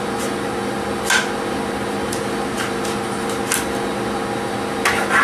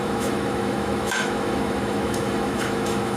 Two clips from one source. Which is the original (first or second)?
first